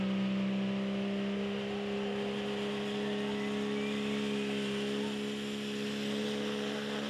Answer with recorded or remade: recorded